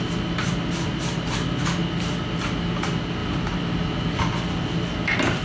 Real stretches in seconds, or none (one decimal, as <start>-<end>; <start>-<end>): 0.0-5.4